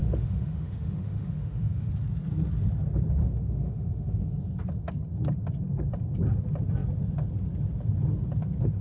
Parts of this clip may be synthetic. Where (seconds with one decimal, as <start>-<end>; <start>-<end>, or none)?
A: 0.0-1.9; 3.2-4.4